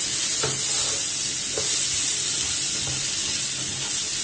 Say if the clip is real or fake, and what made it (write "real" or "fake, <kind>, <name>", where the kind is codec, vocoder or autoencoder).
real